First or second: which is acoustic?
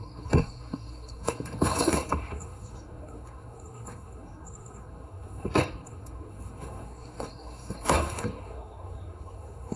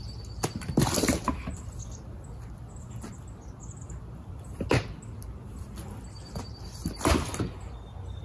second